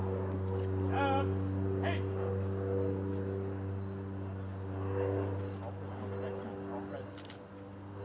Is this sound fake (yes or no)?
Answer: no